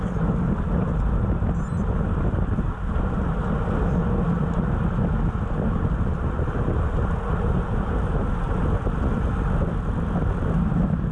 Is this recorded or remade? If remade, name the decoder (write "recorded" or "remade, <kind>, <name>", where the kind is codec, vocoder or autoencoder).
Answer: recorded